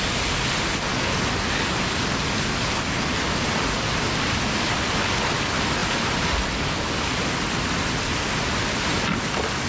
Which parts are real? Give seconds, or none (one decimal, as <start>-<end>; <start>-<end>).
0.0-9.7